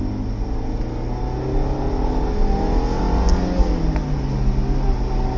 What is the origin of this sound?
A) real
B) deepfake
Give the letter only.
A